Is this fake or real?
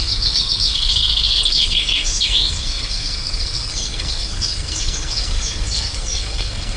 fake